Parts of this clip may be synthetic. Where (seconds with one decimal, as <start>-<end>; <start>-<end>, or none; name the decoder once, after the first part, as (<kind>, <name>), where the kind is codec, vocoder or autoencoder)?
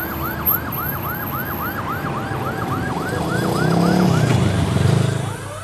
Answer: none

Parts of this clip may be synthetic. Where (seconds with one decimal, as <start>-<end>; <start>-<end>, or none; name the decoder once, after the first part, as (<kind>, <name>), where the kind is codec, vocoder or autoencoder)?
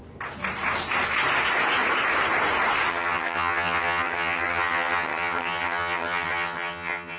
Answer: 2.9-7.2 (vocoder, HiFi-GAN)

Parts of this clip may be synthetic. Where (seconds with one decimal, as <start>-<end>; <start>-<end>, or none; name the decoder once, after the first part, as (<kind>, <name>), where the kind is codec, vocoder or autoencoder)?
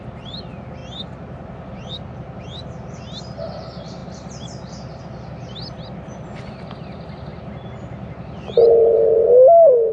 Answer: none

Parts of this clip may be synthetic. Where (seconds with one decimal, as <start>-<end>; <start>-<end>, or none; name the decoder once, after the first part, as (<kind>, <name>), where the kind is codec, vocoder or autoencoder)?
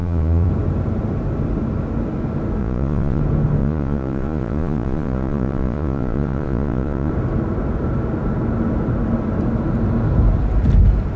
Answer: 0.0-0.5 (vocoder, Vocos); 2.6-3.2; 3.6-7.1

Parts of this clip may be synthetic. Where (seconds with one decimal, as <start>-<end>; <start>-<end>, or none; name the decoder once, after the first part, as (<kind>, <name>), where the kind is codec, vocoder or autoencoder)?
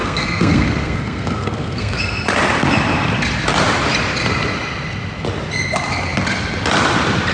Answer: 0.0-2.0 (codec, SNAC)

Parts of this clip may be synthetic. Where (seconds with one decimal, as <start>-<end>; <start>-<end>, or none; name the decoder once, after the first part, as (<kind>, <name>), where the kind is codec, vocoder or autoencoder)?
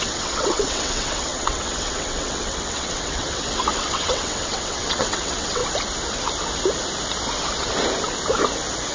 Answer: 0.0-5.6 (vocoder, WaveNeXt)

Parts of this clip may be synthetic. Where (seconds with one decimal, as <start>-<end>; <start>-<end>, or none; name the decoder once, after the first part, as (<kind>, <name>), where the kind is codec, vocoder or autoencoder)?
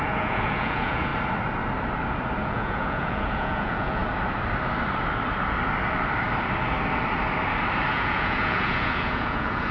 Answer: 0.0-1.1 (vocoder, Vocos); 2.4-4.0; 7.9-9.7